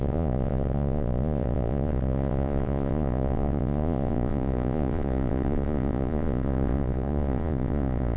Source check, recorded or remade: remade